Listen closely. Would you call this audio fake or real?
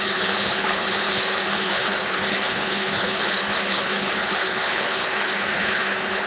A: fake